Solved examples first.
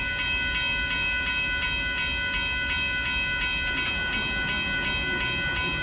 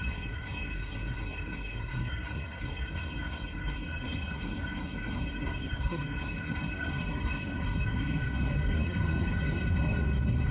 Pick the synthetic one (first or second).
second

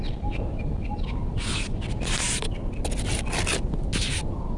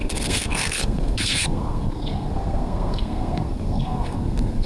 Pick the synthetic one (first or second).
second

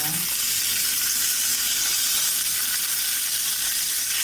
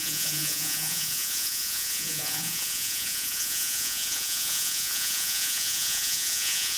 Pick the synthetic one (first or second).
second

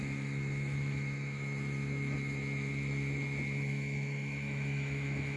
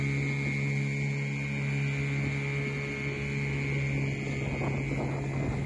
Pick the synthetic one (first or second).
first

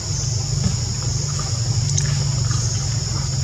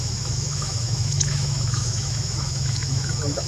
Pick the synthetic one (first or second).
second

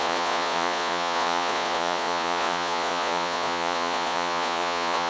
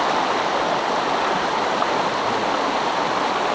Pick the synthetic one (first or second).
first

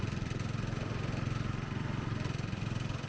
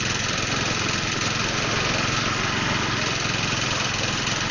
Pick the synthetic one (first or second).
first